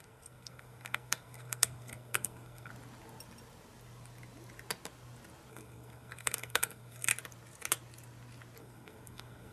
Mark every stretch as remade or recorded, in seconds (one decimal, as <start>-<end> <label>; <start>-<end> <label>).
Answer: 0.0-2.7 remade; 2.7-5.5 recorded; 5.5-7.1 remade; 7.1-8.6 recorded; 8.6-9.5 remade